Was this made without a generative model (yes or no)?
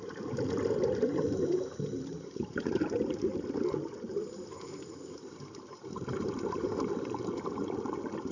yes